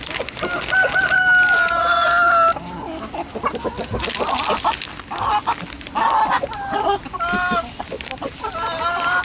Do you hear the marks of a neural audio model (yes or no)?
no